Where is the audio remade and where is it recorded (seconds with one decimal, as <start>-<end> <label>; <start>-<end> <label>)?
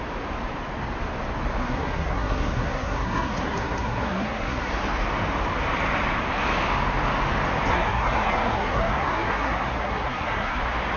0.0-1.6 recorded; 1.6-4.7 remade; 4.7-7.7 recorded; 7.7-10.6 remade; 10.6-11.0 recorded